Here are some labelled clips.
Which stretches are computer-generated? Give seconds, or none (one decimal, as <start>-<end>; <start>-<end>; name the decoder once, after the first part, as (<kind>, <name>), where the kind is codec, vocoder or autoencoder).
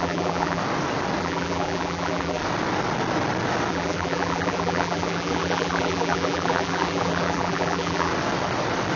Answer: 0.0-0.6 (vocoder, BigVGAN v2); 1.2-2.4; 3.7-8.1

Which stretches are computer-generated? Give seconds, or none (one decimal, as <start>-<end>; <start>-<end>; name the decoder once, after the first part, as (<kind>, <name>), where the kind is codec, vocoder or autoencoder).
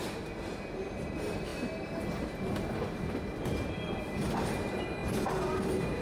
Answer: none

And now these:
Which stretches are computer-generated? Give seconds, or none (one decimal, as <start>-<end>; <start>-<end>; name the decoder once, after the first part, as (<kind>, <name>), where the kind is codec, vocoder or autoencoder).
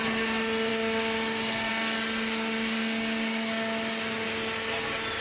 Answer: none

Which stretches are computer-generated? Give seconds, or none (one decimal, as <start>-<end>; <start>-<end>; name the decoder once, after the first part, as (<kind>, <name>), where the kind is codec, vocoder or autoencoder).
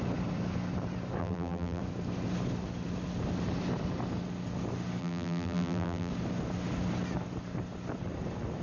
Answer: 1.2-1.8 (vocoder, BigVGAN v2); 5.0-6.1